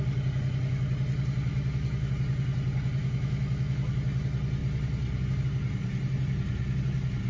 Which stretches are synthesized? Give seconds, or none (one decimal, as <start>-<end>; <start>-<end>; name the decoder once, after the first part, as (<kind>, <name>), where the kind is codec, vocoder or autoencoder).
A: 1.5-2.1 (autoencoder, DAC-VAE); 3.0-3.9